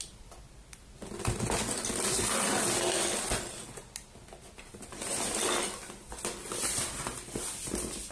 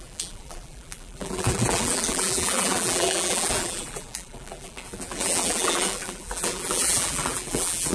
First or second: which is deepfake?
second